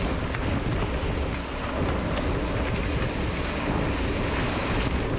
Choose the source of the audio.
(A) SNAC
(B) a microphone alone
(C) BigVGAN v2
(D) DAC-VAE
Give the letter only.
B